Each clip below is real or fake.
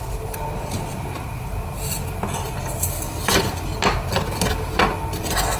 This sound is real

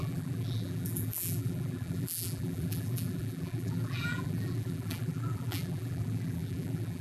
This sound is fake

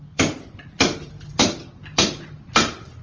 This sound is fake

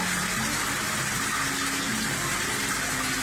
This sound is real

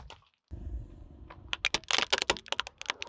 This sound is real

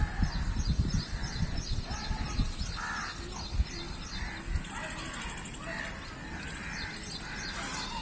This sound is real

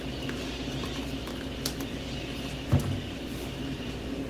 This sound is real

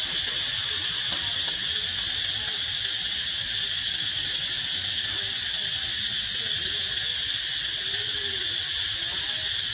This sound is real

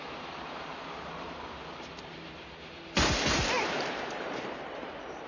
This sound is fake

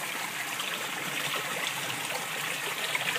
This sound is fake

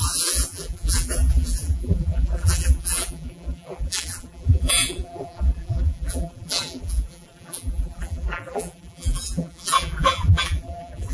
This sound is fake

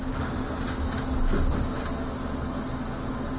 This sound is real